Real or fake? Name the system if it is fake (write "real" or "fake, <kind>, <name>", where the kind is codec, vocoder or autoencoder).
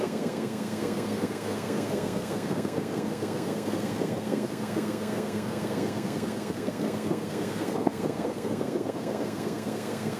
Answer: fake, codec, SNAC